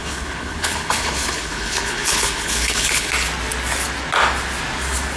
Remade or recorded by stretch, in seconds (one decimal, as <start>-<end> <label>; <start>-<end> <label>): 0.0-3.1 remade; 3.1-5.2 recorded

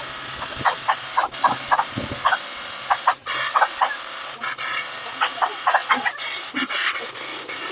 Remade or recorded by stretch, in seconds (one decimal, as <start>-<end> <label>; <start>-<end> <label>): 0.0-7.7 recorded

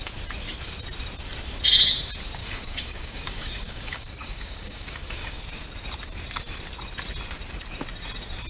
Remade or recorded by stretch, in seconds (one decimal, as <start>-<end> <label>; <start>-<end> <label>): 0.0-2.4 recorded; 2.4-5.4 remade; 5.4-8.5 recorded

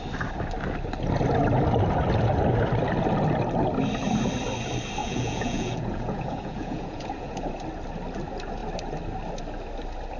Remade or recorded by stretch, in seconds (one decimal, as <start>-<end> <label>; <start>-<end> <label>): 0.0-5.0 recorded; 5.0-7.5 remade; 7.5-10.2 recorded

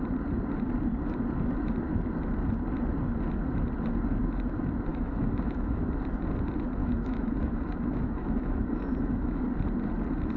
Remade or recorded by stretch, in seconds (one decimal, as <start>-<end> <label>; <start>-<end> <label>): 0.0-4.9 recorded; 4.9-5.8 remade; 5.8-6.8 recorded; 6.8-9.4 remade; 9.4-10.4 recorded